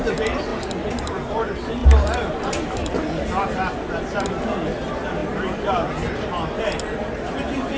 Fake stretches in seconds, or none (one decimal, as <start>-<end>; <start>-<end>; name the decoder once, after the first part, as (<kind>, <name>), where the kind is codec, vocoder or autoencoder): 0.5-1.3 (vocoder, BigVGAN v2); 1.8-2.5; 5.2-5.9